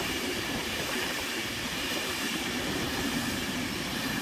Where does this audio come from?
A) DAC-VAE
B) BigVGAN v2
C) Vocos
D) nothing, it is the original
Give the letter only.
B